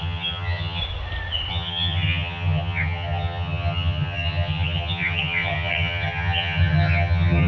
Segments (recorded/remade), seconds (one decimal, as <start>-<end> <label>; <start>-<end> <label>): 0.0-0.8 remade; 0.8-1.5 recorded; 1.5-7.5 remade